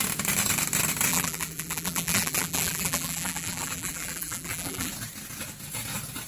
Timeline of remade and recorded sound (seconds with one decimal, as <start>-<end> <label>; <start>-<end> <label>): 0.0-1.1 recorded; 1.1-4.9 remade; 4.9-6.3 recorded